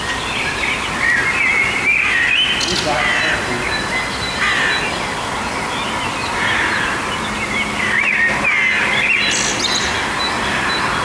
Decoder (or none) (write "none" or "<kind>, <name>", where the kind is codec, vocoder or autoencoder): none